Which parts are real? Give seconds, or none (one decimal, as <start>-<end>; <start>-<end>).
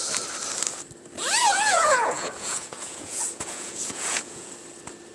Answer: 0.0-1.4; 4.5-5.1